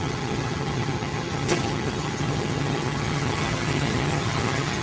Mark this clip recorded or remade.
remade